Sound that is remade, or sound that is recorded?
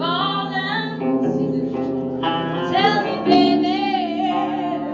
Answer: remade